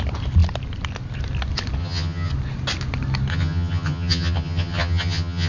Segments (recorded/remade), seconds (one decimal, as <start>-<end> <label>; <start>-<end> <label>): 0.0-1.8 recorded; 1.8-2.3 remade; 2.3-3.3 recorded; 3.3-5.5 remade